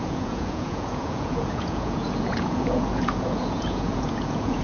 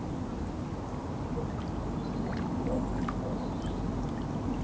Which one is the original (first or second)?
second